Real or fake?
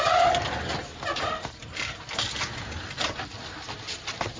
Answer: real